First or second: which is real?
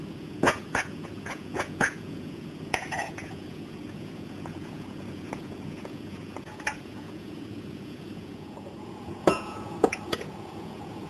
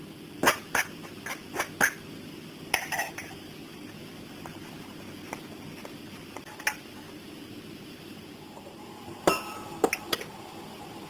second